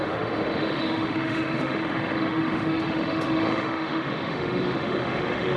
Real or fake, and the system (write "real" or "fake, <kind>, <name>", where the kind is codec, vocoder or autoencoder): fake, autoencoder, DAC-VAE